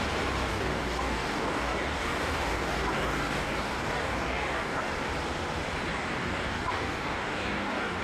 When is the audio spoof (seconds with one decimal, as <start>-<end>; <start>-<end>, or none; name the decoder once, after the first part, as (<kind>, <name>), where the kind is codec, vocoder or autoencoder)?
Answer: 0.5-4.9 (codec, DAC); 5.9-8.0